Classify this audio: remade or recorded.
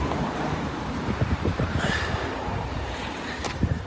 remade